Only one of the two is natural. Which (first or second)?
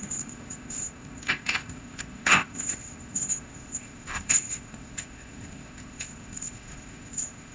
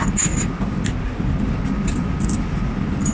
second